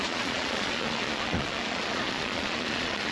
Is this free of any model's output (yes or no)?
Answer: no